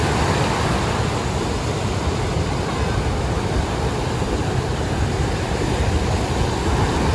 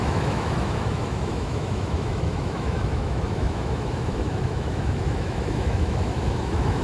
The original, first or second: first